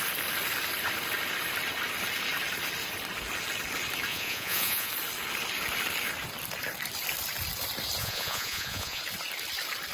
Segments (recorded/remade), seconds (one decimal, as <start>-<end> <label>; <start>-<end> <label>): 0.0-4.1 recorded; 4.1-4.9 remade; 4.9-8.0 recorded; 8.0-9.0 remade; 9.0-9.9 recorded